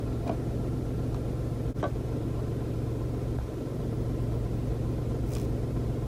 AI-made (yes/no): no